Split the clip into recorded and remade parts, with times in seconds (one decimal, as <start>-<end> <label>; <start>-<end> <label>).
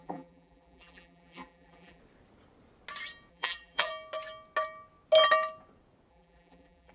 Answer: 0.0-2.0 remade; 2.0-3.3 recorded; 3.3-3.9 remade; 3.9-6.1 recorded; 6.1-6.9 remade